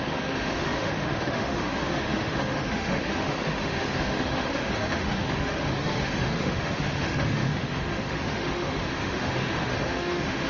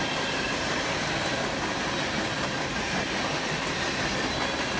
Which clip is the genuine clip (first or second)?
second